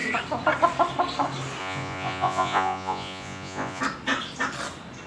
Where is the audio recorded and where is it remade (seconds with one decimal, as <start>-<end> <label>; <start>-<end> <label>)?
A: 0.0-1.6 recorded; 1.6-3.8 remade; 3.8-5.1 recorded